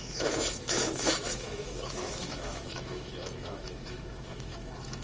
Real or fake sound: fake